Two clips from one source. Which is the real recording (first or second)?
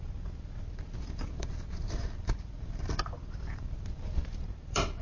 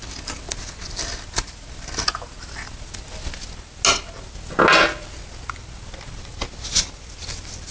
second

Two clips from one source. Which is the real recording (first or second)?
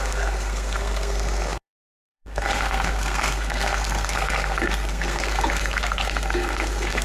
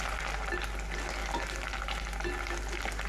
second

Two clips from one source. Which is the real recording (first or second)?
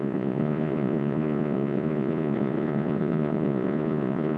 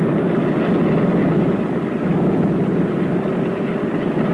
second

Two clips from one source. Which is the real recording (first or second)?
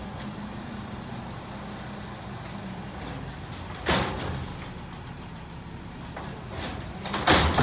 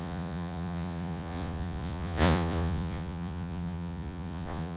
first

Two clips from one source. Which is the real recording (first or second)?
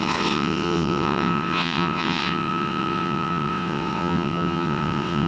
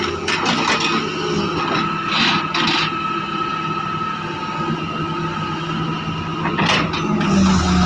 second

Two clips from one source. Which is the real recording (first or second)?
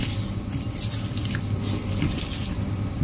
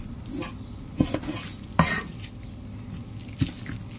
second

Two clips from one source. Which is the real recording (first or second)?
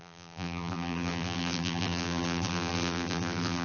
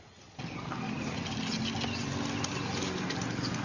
second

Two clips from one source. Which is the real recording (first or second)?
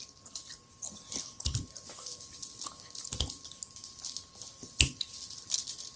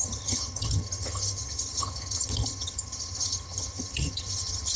first